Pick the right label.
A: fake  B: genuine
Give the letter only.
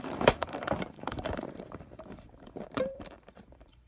A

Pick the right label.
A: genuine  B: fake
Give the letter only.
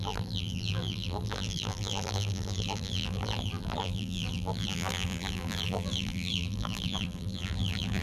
B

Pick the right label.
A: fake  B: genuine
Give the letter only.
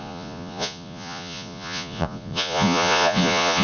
A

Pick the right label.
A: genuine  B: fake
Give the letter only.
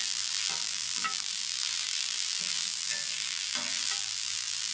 B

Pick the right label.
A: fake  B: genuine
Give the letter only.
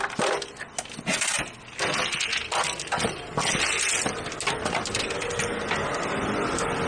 B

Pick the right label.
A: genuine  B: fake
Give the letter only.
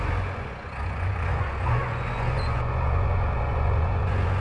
B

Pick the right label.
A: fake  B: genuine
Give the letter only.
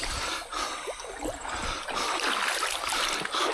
B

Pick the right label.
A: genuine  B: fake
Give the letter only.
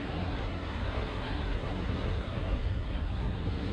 B